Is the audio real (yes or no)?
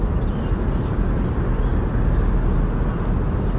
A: yes